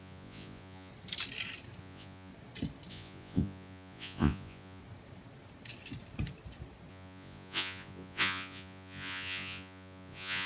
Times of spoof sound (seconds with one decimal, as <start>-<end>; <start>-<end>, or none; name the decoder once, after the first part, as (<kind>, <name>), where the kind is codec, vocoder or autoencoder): 0.0-0.9 (vocoder, Vocos); 1.8-2.3; 2.9-4.8; 6.9-10.5